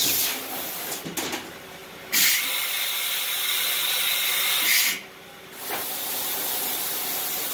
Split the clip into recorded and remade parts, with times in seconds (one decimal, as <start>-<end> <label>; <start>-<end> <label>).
0.0-7.5 recorded